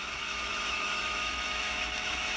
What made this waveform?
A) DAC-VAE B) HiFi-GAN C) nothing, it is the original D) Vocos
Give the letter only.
A